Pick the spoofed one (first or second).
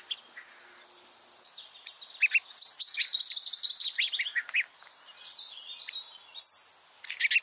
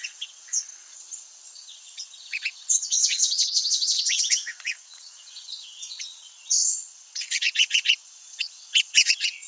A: second